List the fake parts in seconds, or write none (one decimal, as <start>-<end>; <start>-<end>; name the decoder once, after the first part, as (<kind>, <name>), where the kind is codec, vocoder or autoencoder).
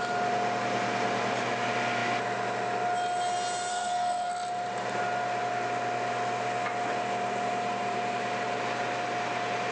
3.7-4.3 (codec, SNAC)